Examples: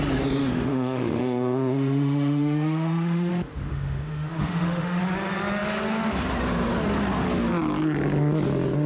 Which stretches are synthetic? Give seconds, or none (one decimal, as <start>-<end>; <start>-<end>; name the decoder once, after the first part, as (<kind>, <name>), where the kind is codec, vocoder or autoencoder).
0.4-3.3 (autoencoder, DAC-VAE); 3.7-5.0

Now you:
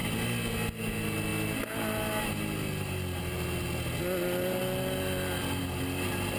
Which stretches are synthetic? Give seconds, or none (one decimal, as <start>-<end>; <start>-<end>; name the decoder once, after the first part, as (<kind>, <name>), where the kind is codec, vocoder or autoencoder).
none

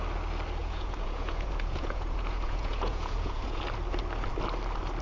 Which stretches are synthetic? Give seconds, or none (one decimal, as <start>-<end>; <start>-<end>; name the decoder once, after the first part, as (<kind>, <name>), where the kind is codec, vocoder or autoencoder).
0.6-3.6 (vocoder, Vocos)

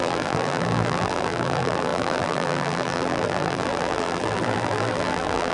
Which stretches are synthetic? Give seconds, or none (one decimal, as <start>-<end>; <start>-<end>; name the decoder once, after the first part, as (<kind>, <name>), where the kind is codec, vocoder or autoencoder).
0.0-5.5 (vocoder, BigVGAN v2)

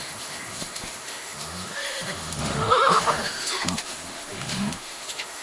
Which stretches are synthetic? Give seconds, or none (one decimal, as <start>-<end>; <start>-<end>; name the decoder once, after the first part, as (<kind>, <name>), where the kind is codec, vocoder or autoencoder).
0.0-5.4 (autoencoder, DAC-VAE)

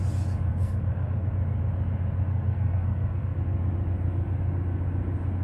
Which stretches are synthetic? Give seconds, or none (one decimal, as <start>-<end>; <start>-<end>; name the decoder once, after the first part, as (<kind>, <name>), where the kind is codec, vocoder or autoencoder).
0.5-1.3 (codec, SNAC); 2.3-3.4

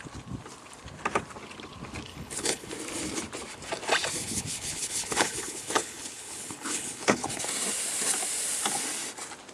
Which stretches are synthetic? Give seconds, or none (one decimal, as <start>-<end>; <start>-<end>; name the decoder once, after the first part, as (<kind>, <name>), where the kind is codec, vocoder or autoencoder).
2.1-2.7 (codec, HILCodec); 4.2-7.4

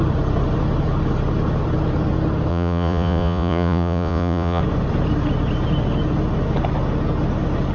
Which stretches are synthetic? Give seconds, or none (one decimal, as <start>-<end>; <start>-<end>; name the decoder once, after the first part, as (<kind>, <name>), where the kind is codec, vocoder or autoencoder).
2.5-4.6 (vocoder, Vocos)